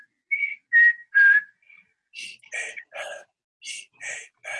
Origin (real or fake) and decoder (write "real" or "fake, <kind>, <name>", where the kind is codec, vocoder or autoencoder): real